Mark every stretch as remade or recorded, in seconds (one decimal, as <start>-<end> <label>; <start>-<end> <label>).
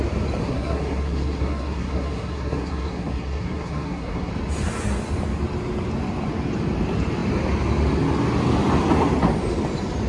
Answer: 0.0-0.4 recorded; 0.4-4.3 remade; 4.3-10.1 recorded